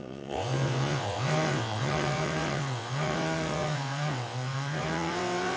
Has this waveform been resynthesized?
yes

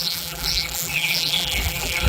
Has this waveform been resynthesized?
yes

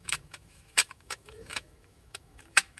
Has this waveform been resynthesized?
yes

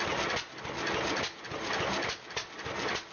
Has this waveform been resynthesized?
no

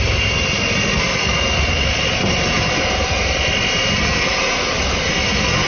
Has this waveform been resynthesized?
no